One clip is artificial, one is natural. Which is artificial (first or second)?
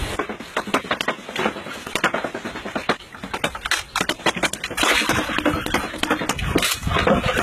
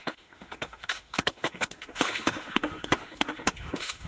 second